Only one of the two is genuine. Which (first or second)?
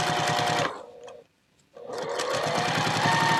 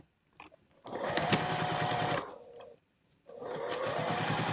first